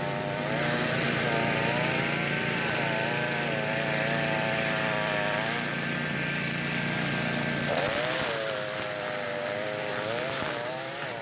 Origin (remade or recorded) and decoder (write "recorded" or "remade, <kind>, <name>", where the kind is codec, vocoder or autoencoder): remade, vocoder, BigVGAN v2